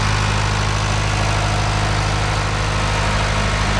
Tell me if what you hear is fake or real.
real